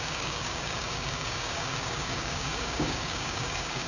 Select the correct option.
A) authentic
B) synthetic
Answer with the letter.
B